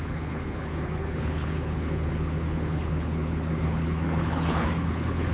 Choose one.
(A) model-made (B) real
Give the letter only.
A